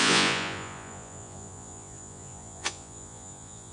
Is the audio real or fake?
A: fake